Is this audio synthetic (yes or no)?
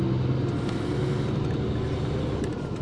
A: no